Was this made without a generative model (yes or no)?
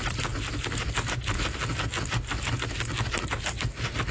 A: yes